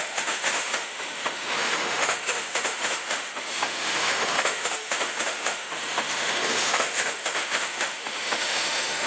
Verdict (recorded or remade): remade